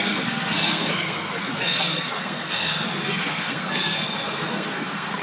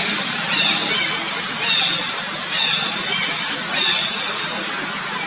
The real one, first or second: second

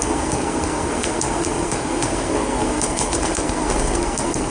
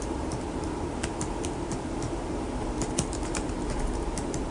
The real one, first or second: second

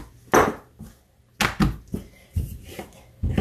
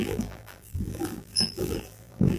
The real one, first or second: first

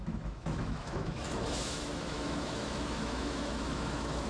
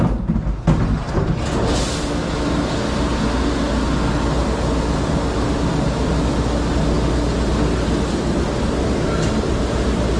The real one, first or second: second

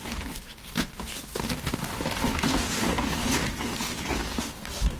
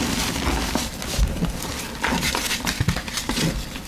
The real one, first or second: second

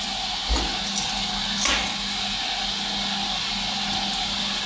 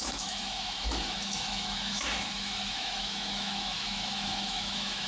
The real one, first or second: first